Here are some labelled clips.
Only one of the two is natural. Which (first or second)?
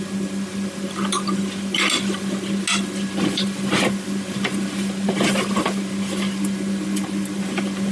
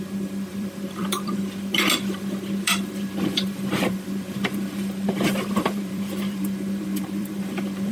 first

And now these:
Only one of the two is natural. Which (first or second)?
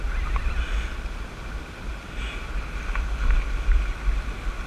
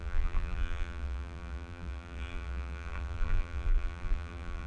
first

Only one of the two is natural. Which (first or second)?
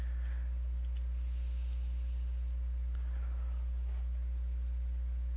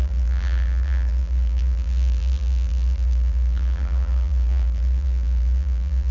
first